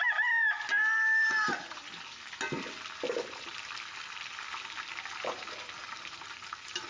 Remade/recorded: recorded